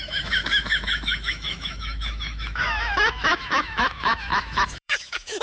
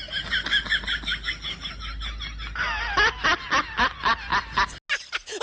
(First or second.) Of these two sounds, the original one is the second